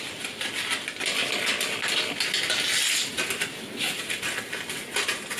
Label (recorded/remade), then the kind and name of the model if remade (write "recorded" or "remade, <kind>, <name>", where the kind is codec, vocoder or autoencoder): recorded